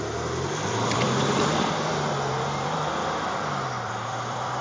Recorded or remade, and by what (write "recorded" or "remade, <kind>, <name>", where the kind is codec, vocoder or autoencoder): remade, vocoder, BigVGAN v2